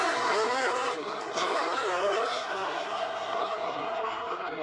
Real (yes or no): no